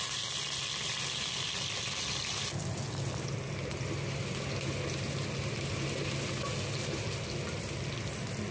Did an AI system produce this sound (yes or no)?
no